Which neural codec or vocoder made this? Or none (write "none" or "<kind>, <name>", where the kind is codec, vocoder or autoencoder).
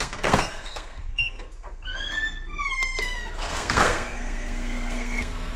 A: codec, SNAC